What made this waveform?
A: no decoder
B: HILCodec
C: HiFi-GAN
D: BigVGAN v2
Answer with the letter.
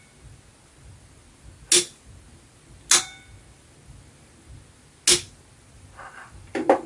A